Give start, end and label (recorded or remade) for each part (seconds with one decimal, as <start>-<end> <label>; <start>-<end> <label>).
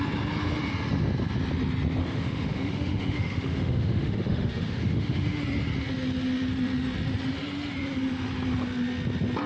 0.0-2.0 recorded; 2.0-5.4 remade; 5.4-9.5 recorded